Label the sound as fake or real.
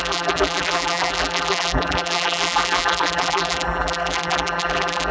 fake